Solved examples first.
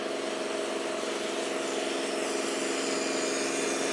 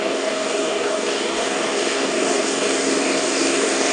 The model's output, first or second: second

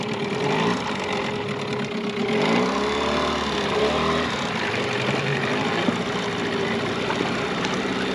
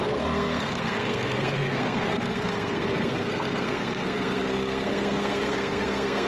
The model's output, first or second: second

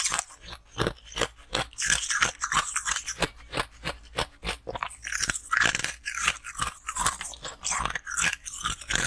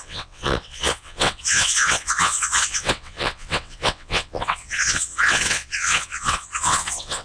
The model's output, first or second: second